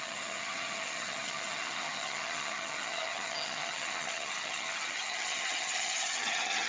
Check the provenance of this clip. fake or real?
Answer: fake